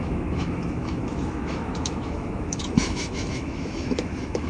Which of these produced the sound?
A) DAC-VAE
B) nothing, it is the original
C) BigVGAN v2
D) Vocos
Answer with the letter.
A